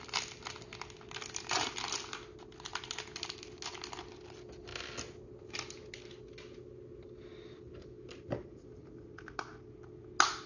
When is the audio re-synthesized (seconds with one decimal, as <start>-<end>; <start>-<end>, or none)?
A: none